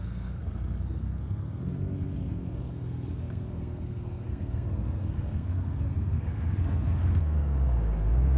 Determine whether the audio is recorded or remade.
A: remade